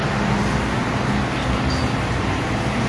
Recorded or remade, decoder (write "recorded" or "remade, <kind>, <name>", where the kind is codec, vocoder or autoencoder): recorded